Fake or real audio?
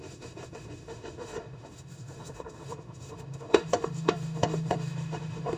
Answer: fake